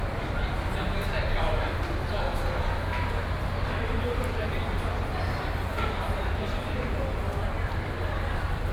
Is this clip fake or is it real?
real